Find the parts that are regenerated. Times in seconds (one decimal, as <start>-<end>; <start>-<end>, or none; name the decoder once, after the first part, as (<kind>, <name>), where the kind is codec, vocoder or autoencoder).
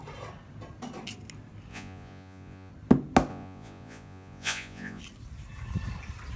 1.7-2.7 (vocoder, Vocos); 3.3-5.0